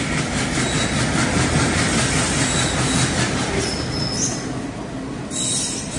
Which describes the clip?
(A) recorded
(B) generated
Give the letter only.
A